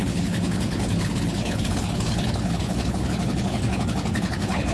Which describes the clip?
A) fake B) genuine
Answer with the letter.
A